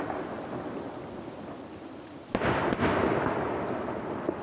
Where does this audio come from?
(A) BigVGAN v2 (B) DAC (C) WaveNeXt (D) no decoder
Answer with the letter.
D